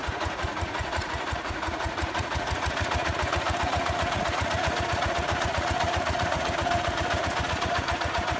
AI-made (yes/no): yes